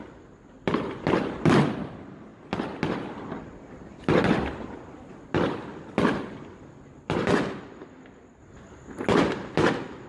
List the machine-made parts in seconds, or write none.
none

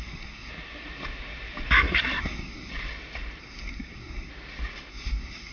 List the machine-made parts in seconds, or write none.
0.0-0.5 (codec, SNAC); 2.2-2.7; 3.4-4.3; 4.9-5.5

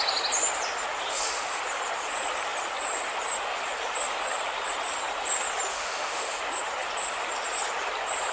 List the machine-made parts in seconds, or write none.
1.1-1.6 (autoencoder, DAC-VAE); 5.7-6.4

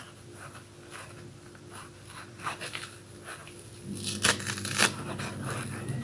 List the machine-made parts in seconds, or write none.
none

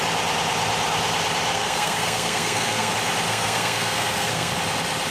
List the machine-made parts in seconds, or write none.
1.5-2.9 (codec, SNAC); 3.3-4.5